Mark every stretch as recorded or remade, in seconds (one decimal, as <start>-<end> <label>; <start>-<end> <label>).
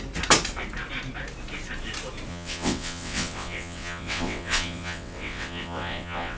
0.0-2.3 recorded; 2.3-6.4 remade